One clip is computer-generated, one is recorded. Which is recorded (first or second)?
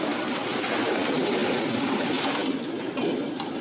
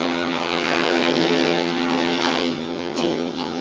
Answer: first